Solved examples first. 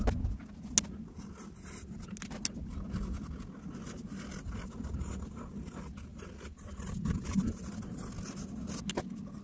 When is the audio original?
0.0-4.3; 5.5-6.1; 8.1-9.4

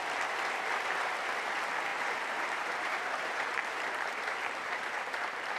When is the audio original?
0.0-1.9

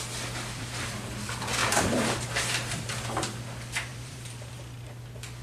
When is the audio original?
0.0-1.6; 3.4-3.9; 4.5-5.4